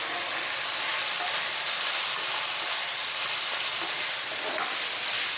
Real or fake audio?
real